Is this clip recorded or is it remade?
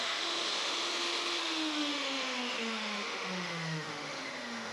remade